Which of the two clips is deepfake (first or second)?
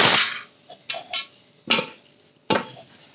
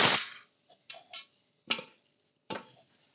second